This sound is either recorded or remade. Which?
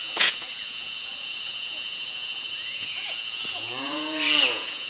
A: remade